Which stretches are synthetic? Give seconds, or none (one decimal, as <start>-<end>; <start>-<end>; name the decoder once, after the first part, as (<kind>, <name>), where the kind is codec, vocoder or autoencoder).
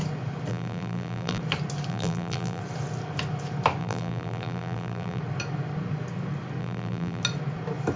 0.5-1.4 (vocoder, BigVGAN v2); 1.9-2.6; 3.8-5.2; 6.6-7.2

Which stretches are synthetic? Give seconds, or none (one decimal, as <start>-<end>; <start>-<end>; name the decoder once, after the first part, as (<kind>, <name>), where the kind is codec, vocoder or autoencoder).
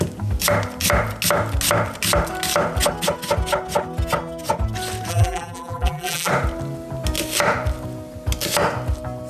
5.1-6.3 (vocoder, BigVGAN v2)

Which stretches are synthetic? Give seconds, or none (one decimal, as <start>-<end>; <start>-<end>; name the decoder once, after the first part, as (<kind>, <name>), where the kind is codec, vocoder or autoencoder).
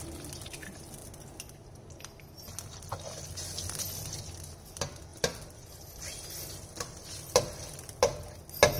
5.1-7.7 (vocoder, BigVGAN v2)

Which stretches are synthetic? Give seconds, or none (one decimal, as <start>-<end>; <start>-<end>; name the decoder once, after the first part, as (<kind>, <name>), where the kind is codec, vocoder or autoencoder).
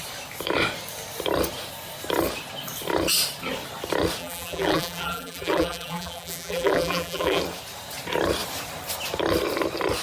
4.2-7.4 (vocoder, BigVGAN v2)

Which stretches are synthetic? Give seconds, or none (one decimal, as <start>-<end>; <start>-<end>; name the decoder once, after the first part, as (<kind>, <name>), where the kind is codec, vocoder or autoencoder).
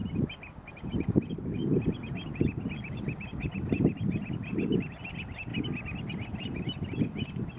0.0-1.6 (vocoder, BigVGAN v2); 2.3-5.5; 6.3-7.6